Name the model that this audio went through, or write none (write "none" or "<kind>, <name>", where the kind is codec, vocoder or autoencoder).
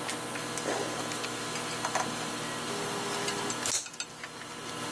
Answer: none